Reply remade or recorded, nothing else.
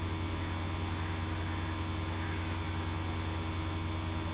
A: recorded